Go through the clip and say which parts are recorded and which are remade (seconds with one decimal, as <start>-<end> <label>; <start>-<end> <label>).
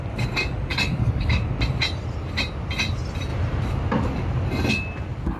0.0-0.7 recorded; 0.7-1.4 remade; 1.4-5.4 recorded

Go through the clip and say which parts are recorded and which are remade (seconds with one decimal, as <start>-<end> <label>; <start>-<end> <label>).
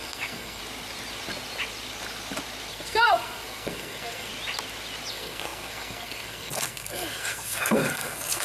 0.0-0.6 remade; 0.6-2.7 recorded; 2.7-4.3 remade; 4.3-5.1 recorded; 5.1-8.4 remade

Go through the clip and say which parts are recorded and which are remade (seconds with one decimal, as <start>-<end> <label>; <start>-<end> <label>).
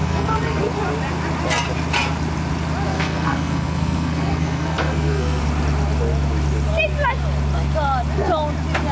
0.0-0.6 remade; 0.6-2.9 recorded; 2.9-5.4 remade; 5.4-8.9 recorded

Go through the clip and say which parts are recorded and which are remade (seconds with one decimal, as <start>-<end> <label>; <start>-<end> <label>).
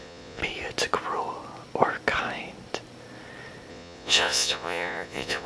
0.0-0.4 remade; 0.4-3.7 recorded; 3.7-5.5 remade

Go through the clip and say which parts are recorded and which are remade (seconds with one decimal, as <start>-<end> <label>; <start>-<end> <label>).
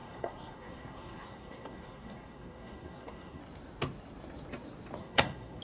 0.0-3.4 remade; 3.4-5.0 recorded; 5.0-5.6 remade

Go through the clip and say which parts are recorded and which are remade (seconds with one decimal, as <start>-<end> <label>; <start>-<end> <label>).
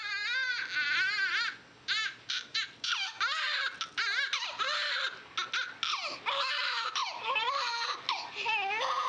0.0-7.0 recorded; 7.0-7.7 remade; 7.7-9.1 recorded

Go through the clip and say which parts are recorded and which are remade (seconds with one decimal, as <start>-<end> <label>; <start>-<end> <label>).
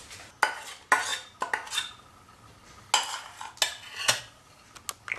0.0-5.2 recorded